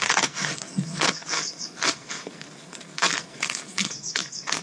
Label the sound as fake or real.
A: fake